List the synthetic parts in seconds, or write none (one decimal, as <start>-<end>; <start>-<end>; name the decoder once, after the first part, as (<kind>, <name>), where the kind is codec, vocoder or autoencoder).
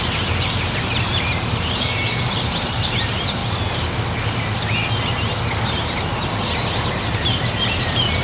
0.0-3.4 (vocoder, BigVGAN v2); 6.9-8.2